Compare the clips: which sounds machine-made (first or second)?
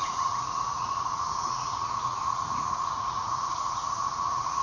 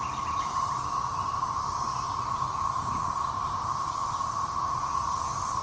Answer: first